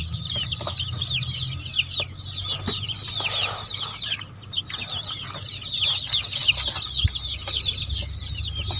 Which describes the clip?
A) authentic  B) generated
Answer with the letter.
B